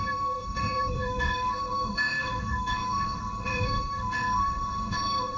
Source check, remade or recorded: remade